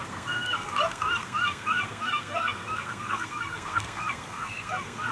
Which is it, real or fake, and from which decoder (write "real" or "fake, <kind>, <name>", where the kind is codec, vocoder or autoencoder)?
fake, codec, SNAC